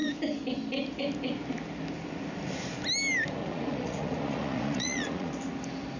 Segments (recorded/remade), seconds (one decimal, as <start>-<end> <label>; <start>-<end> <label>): 0.0-3.4 recorded; 3.4-5.3 remade; 5.3-6.0 recorded